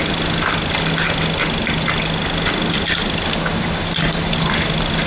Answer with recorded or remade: recorded